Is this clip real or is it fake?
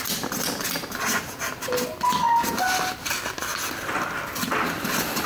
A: real